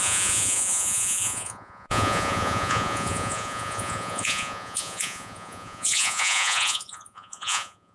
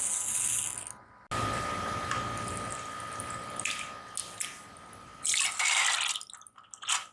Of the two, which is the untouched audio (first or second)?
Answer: second